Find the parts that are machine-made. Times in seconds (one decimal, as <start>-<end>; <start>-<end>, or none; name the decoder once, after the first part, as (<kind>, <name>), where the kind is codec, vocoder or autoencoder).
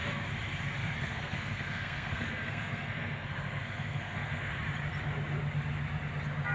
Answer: 0.8-4.6 (codec, SNAC)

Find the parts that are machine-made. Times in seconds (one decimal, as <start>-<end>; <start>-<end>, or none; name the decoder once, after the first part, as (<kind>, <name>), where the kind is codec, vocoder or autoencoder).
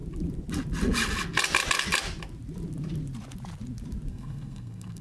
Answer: 4.1-5.0 (codec, SNAC)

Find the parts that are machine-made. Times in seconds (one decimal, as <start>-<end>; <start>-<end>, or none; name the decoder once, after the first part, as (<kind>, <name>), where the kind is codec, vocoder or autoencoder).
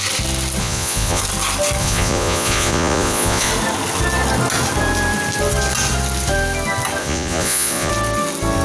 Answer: 0.6-1.2 (vocoder, Vocos); 1.8-3.5; 7.0-7.9